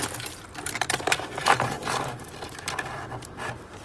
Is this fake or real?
fake